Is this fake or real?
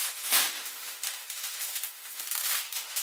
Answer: fake